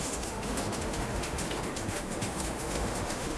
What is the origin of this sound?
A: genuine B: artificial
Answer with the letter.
B